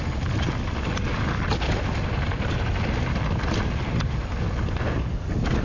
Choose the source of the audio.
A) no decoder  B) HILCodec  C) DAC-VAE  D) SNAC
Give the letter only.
A